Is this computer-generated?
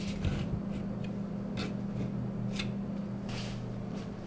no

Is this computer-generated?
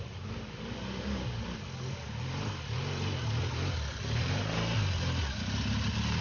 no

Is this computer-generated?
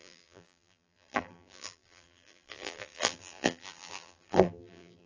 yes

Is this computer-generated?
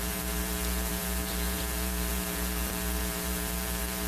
yes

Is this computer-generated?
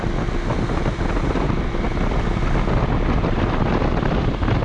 no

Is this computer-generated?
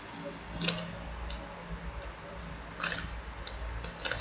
no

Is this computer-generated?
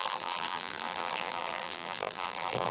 yes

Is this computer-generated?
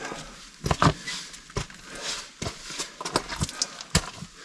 no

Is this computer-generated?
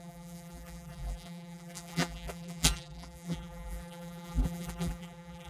yes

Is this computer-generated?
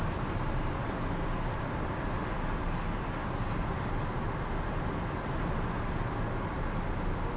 no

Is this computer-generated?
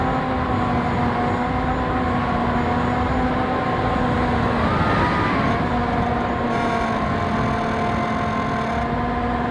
no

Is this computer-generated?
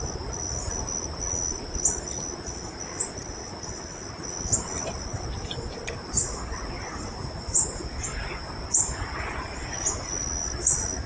no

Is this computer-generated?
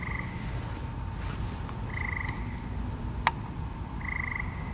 no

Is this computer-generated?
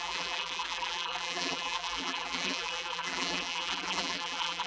yes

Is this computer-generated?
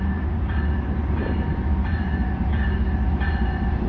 yes